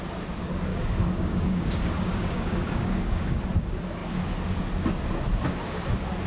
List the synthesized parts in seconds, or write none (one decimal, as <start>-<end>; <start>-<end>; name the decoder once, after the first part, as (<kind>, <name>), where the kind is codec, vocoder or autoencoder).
0.7-3.4 (codec, DAC)